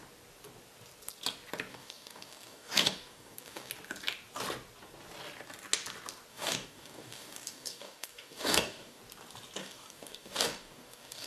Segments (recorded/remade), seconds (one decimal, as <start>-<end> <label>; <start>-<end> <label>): 0.0-1.7 recorded; 1.7-3.7 remade; 3.7-6.3 recorded; 6.3-9.0 remade; 9.0-9.6 recorded; 9.6-11.3 remade